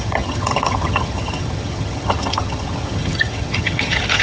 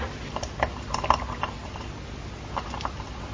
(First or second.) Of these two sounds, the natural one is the second